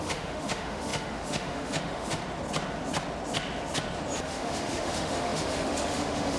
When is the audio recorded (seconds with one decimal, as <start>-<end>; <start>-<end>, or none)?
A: 2.2-4.2

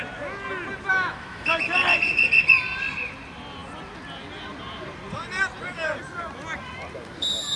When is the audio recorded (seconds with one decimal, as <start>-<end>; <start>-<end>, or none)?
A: 0.0-0.9; 1.6-7.6

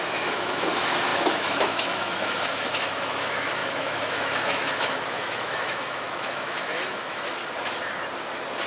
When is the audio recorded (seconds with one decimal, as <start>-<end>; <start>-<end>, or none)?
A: 7.4-8.7

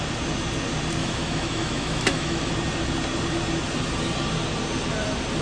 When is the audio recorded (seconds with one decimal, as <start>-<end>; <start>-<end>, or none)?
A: 0.0-1.0; 2.5-5.4

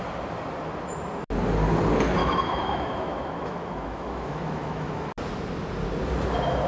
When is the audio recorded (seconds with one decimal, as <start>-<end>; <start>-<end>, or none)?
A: 0.0-2.2; 5.1-6.7